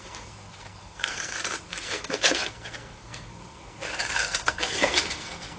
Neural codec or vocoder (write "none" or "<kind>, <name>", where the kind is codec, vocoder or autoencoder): codec, SNAC